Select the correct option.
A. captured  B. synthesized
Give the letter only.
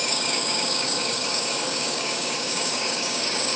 B